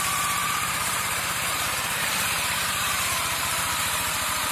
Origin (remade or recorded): remade